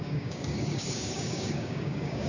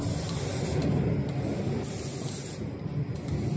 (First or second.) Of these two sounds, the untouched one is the second